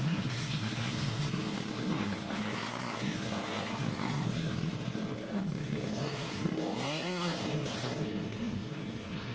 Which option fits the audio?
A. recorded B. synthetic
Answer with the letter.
B